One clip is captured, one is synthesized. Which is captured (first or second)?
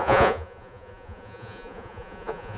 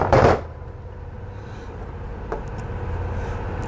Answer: second